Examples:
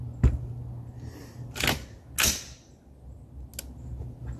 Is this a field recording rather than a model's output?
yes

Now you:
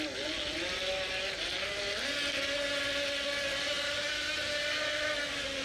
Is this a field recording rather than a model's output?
yes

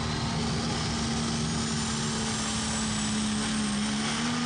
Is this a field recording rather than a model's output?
yes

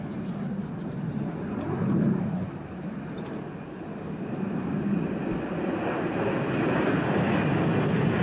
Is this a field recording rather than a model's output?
yes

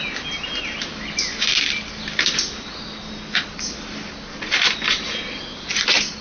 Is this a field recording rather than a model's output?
yes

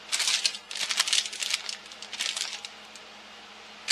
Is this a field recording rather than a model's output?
yes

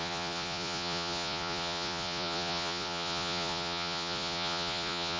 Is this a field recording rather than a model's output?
no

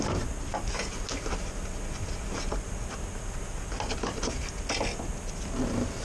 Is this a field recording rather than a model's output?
yes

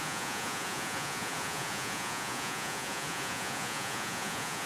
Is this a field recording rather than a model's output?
no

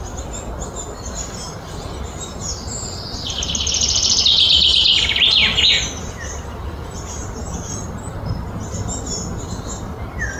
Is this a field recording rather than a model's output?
yes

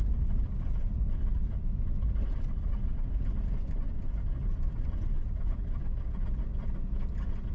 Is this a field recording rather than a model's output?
yes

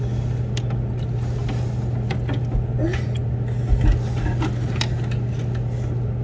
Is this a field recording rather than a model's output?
yes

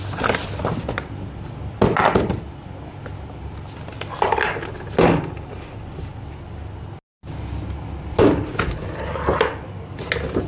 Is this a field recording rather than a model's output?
yes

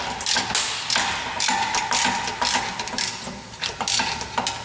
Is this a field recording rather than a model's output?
yes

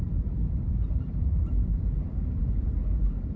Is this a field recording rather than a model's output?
no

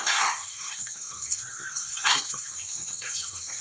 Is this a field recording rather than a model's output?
no